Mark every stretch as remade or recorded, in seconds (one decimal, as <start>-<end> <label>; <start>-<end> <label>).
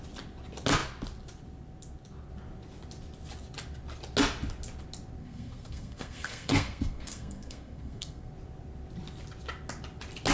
0.0-5.2 recorded; 5.2-8.3 remade; 8.3-10.3 recorded